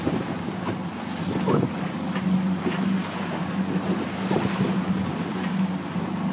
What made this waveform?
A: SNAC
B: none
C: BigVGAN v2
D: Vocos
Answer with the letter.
B